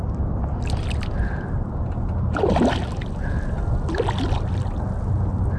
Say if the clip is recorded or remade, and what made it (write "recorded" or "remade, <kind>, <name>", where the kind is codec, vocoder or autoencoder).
recorded